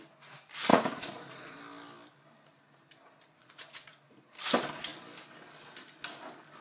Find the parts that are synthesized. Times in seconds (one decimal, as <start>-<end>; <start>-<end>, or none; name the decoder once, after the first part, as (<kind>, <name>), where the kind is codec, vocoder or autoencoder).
0.7-1.6 (vocoder, Vocos); 3.4-4.3